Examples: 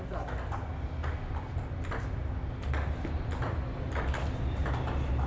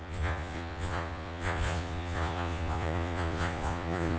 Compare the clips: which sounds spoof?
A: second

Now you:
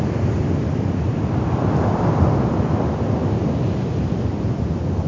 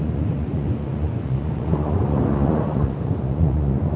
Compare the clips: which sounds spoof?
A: second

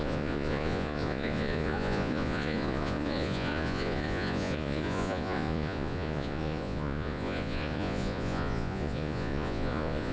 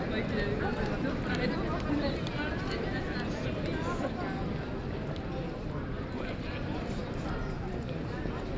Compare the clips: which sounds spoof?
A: first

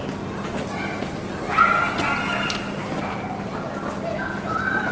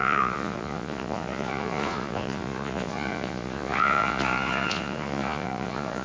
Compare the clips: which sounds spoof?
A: second